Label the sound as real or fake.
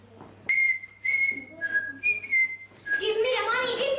real